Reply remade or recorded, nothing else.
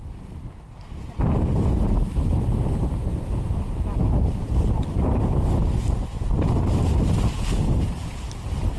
recorded